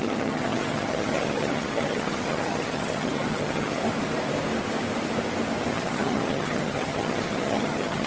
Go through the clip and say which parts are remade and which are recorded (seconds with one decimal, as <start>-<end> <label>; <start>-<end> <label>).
0.0-3.8 remade; 3.8-5.7 recorded; 5.7-8.1 remade